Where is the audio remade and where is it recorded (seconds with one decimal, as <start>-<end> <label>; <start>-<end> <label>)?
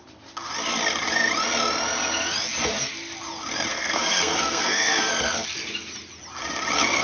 0.0-3.7 recorded; 3.7-5.1 remade; 5.1-7.0 recorded